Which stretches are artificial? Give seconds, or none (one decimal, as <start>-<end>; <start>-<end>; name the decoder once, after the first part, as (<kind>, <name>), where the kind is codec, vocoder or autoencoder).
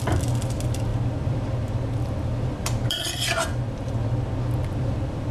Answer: 0.9-4.1 (vocoder, BigVGAN v2); 4.6-5.3